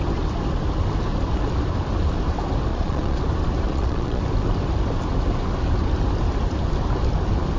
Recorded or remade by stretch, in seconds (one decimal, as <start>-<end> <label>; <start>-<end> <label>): 0.0-2.7 recorded; 2.7-3.2 remade; 3.2-3.7 recorded; 3.7-4.2 remade; 4.2-7.6 recorded